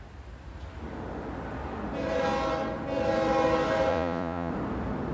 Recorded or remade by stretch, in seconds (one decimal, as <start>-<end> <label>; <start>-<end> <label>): 0.0-3.9 recorded; 3.9-4.5 remade; 4.5-5.1 recorded